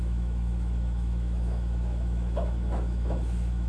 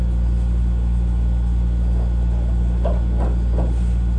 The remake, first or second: first